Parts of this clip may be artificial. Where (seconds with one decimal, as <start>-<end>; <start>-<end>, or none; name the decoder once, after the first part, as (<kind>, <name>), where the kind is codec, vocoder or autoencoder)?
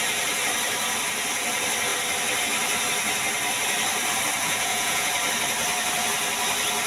4.4-5.1 (vocoder, Vocos)